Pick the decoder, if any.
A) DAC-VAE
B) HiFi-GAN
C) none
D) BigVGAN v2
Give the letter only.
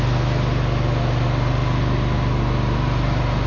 C